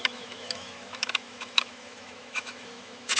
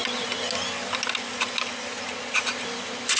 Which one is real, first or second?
second